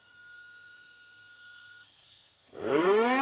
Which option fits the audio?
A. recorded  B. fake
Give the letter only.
B